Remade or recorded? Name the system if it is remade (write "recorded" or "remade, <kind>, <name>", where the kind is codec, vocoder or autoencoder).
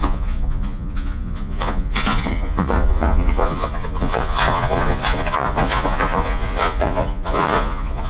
remade, vocoder, Vocos